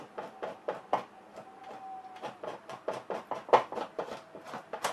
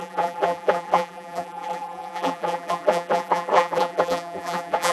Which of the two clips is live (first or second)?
first